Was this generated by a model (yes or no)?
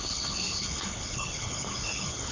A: yes